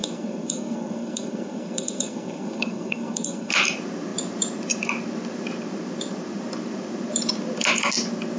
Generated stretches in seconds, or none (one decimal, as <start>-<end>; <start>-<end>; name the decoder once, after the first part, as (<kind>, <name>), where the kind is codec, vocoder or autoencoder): 0.0-3.5 (codec, SNAC)